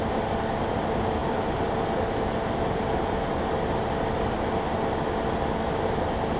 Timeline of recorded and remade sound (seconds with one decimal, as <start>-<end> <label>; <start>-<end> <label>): 0.0-1.2 recorded; 1.2-1.8 remade; 1.8-6.4 recorded